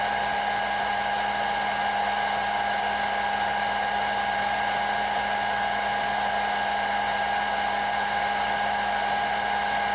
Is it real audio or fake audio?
real